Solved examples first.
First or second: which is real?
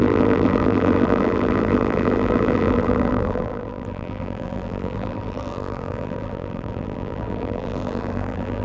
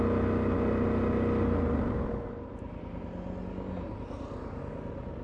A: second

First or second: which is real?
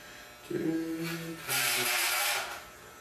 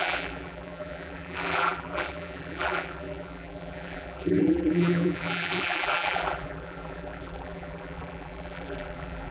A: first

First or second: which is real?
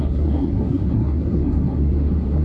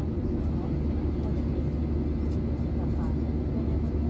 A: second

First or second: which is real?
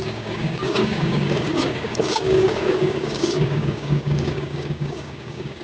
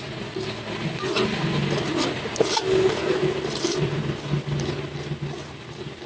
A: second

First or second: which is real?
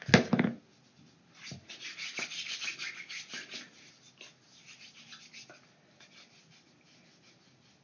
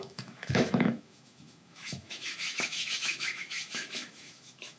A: first